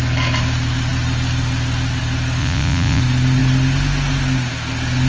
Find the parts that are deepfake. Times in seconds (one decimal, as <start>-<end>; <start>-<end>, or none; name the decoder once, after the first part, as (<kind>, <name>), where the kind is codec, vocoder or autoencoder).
2.4-3.0 (vocoder, Vocos)